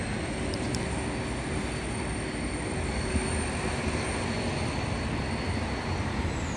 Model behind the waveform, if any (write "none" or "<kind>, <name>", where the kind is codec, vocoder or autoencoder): none